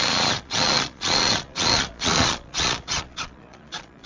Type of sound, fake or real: fake